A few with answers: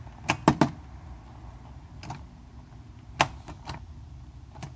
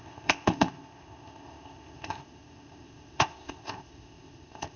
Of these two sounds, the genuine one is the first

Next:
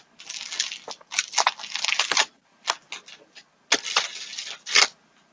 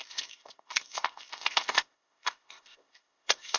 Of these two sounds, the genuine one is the first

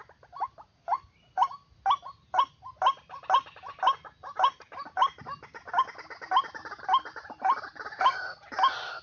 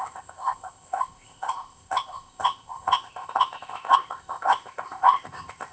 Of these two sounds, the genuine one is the first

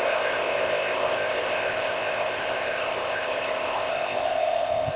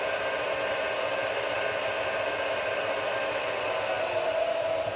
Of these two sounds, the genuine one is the second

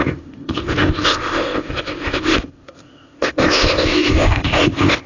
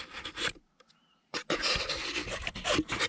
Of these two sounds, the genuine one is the second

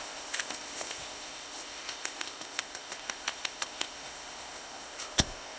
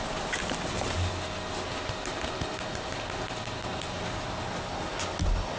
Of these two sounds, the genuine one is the second